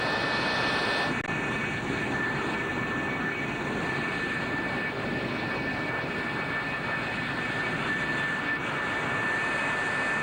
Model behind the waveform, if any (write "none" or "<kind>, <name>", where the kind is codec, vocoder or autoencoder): none